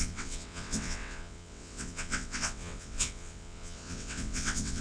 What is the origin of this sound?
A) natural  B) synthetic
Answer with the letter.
B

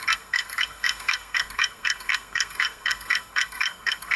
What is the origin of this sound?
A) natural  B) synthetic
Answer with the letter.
B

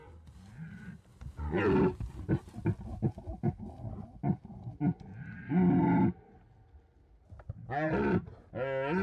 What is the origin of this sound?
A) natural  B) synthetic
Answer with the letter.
A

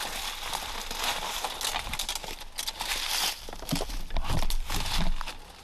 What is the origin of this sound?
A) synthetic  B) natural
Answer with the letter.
B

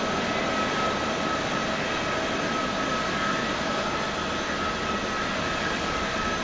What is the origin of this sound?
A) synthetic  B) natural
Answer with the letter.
B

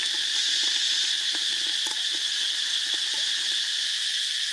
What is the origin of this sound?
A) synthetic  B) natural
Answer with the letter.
B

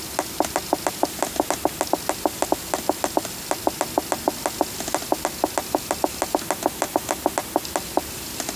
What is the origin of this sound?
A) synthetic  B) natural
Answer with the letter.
B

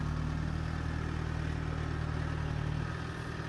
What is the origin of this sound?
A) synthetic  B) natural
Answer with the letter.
B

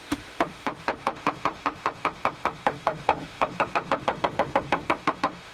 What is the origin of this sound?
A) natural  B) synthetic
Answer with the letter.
B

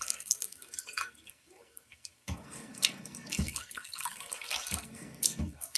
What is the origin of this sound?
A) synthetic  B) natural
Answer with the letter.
A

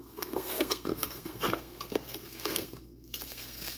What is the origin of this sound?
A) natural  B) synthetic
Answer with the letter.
B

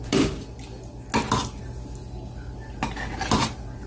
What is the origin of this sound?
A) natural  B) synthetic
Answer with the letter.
A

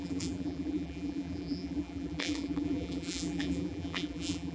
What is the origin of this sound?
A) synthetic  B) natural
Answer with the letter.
A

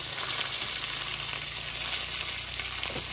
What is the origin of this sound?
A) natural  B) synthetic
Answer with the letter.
A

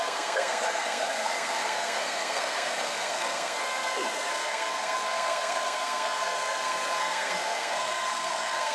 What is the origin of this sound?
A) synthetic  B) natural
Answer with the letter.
A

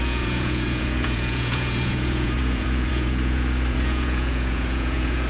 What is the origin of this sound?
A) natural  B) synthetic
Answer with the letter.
B